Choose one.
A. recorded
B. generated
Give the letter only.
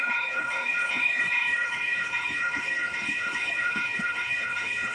B